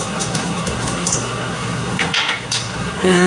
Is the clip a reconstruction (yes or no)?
yes